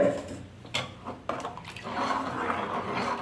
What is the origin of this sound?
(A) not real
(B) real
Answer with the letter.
B